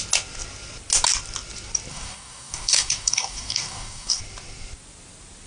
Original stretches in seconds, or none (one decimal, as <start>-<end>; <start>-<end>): 0.0-1.9; 4.2-5.5